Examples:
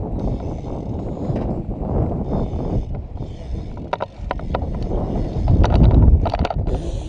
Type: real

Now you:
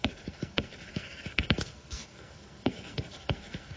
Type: fake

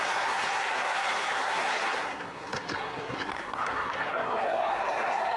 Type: fake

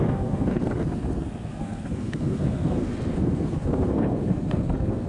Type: fake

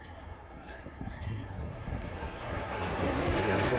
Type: fake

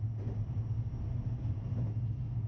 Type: real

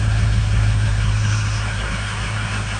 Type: fake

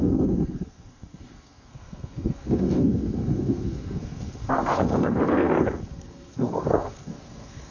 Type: fake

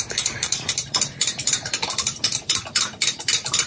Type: real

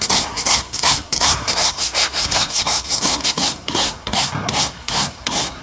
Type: fake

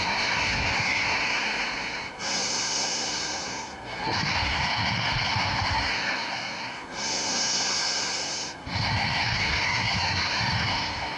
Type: fake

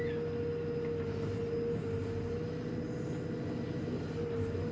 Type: real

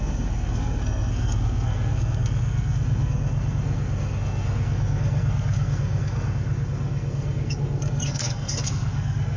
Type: fake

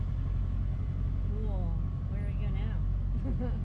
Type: real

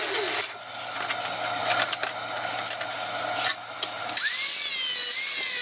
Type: real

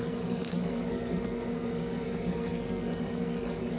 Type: fake